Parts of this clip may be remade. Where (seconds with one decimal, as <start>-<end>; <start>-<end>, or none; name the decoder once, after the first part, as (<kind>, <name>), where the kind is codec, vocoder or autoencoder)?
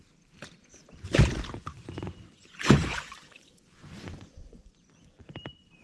1.7-5.2 (vocoder, Vocos)